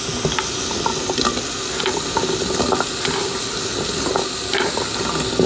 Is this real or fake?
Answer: real